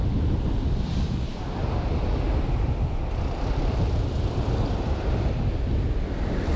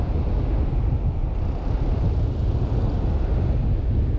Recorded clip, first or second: second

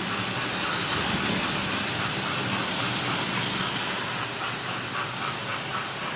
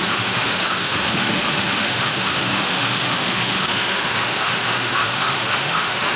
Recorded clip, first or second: first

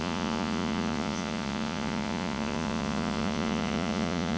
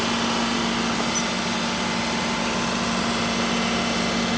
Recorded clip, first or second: second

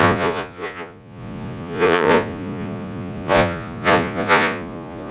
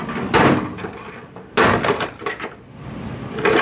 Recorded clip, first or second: second